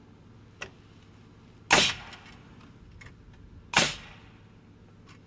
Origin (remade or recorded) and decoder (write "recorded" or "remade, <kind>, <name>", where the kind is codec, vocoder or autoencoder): recorded